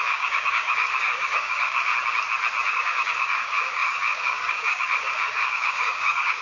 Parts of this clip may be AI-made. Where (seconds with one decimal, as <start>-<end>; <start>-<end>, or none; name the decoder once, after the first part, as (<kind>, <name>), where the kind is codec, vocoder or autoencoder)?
0.0-1.9 (codec, DAC); 2.7-6.4